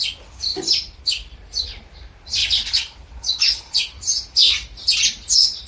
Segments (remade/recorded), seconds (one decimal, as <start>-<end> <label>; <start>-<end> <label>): 0.0-2.4 recorded; 2.4-3.4 remade; 3.4-4.4 recorded; 4.4-5.7 remade